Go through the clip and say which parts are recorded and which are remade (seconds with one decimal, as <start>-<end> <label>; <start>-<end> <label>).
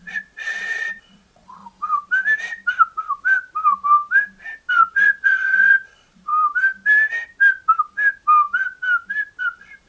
0.0-1.6 remade; 1.6-4.7 recorded; 4.7-6.3 remade; 6.3-9.4 recorded; 9.4-9.9 remade